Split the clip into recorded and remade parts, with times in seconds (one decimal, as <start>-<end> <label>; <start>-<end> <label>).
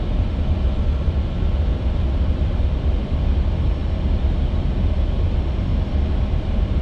0.0-5.7 remade; 5.7-6.2 recorded; 6.2-6.8 remade